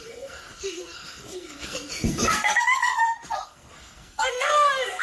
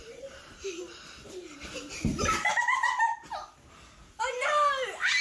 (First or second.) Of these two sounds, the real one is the second